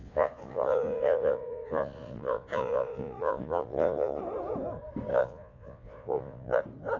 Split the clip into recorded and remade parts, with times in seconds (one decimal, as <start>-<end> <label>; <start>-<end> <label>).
0.0-4.2 remade; 4.2-5.1 recorded; 5.1-6.6 remade; 6.6-7.0 recorded